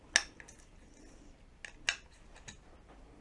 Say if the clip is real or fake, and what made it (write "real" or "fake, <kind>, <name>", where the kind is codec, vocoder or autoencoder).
real